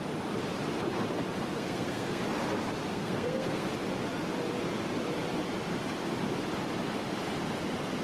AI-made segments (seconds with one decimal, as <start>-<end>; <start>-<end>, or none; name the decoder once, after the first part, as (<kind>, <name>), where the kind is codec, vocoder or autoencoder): 1.4-2.2 (codec, SNAC); 2.9-3.7